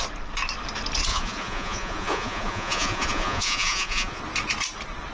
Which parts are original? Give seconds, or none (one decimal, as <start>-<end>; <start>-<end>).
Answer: 0.0-1.1; 4.2-5.1